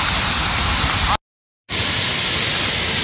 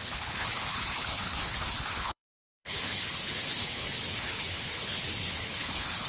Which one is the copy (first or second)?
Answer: second